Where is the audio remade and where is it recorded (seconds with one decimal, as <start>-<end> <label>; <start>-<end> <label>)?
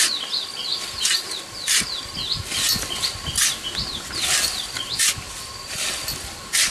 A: 0.0-6.7 recorded